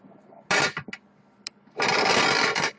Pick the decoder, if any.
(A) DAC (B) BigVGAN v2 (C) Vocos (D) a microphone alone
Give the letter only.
D